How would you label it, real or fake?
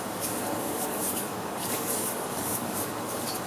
fake